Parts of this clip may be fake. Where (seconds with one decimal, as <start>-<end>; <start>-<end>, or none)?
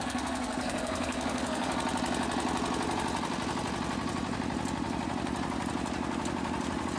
0.0-1.7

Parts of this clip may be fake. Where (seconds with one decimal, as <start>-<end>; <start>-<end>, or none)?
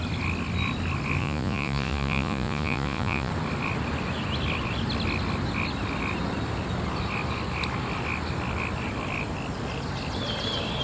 1.2-3.3